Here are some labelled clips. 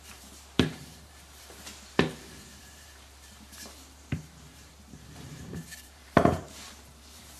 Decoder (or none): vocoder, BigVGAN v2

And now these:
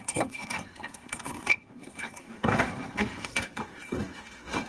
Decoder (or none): codec, SNAC